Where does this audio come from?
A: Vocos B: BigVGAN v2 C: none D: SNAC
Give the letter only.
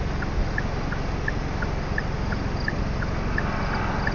C